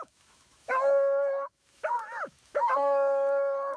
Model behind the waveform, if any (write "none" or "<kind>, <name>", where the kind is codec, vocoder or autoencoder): autoencoder, DAC-VAE